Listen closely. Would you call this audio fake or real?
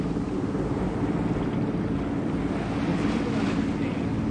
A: real